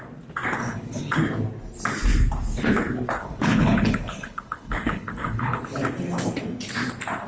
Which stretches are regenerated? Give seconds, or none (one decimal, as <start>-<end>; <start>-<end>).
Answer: 0.6-1.2; 3.2-5.6